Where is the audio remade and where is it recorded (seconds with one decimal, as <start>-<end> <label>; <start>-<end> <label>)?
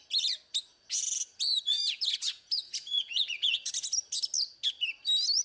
0.0-1.7 recorded; 1.7-3.7 remade; 3.7-5.4 recorded